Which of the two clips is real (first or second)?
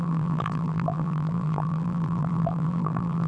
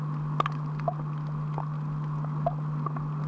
second